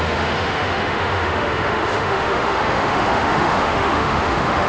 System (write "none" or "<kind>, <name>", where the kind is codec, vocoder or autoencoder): autoencoder, DAC-VAE